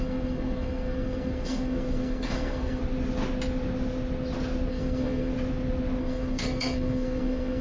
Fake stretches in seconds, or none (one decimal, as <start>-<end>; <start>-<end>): 0.0-2.8; 4.7-5.3; 6.0-7.6